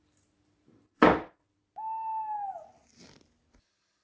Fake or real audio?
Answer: real